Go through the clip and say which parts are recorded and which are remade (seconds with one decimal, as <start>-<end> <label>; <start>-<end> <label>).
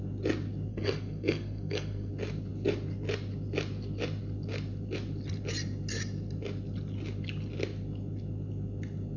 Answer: 0.0-0.7 recorded; 0.7-2.1 remade; 2.1-9.2 recorded